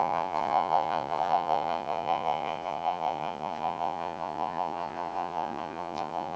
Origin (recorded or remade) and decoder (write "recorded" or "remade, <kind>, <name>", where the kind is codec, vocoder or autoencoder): remade, vocoder, Vocos